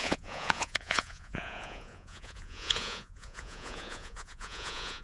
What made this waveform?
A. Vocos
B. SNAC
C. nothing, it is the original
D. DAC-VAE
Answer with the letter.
A